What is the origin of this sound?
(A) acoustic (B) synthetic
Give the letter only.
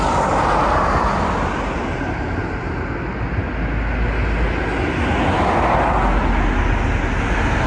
A